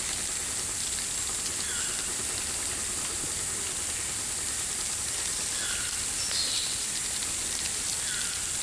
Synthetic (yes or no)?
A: no